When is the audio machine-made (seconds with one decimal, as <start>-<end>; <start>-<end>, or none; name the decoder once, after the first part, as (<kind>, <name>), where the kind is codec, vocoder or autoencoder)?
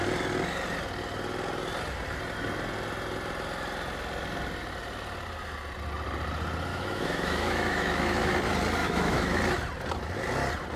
6.7-8.3 (autoencoder, DAC-VAE); 8.8-9.4